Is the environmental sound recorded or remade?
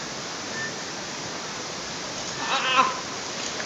recorded